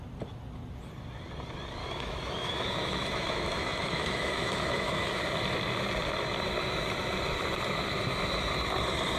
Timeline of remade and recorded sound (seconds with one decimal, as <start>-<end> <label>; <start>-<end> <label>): 0.0-1.8 recorded; 1.8-5.2 remade; 5.2-9.2 recorded

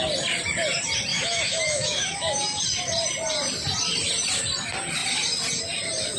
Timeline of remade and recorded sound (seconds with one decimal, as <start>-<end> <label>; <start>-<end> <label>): 0.0-1.1 recorded; 1.1-2.6 remade; 2.6-6.2 recorded

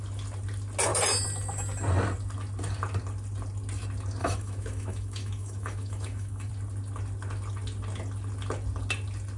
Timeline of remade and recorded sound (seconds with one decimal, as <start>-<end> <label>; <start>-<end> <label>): 0.0-4.2 recorded; 4.2-6.5 remade; 6.5-9.4 recorded

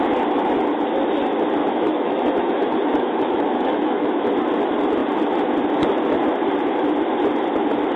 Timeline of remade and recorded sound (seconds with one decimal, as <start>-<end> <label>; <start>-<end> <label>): 0.0-1.6 recorded; 1.6-4.3 remade; 4.3-8.0 recorded

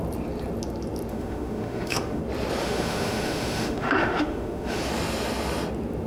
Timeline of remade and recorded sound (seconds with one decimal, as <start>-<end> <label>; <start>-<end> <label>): 0.0-1.1 recorded; 1.1-2.2 remade; 2.2-2.6 recorded; 2.6-4.8 remade; 4.8-6.1 recorded

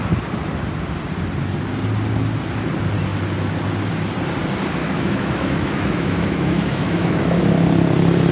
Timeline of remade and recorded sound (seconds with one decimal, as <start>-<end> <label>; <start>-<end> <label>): 0.0-4.8 recorded; 4.8-7.4 remade; 7.4-8.3 recorded